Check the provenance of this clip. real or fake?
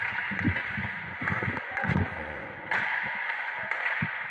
fake